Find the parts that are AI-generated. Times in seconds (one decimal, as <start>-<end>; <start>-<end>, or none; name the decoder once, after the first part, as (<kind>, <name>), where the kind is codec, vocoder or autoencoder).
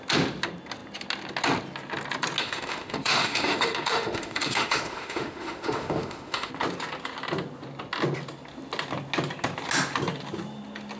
2.4-6.5 (autoencoder, DAC-VAE)